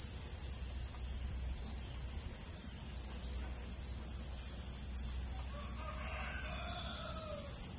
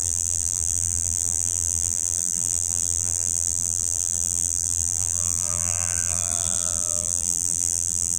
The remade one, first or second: second